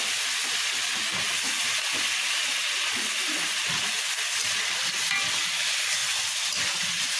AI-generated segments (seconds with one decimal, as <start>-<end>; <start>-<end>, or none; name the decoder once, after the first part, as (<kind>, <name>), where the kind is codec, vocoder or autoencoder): none